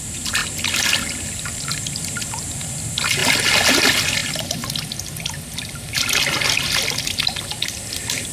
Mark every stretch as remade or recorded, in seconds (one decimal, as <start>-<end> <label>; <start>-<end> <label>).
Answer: 0.0-8.3 recorded